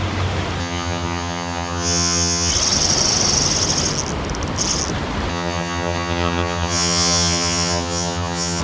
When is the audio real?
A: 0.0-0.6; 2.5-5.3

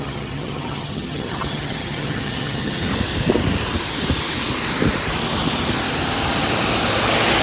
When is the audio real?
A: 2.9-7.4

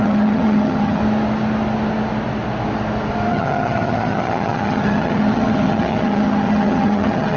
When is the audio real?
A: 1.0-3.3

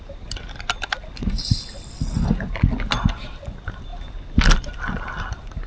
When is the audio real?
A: 0.0-5.7

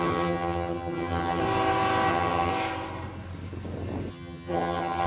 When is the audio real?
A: 1.4-2.1; 2.5-4.1